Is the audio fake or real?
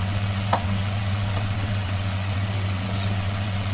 fake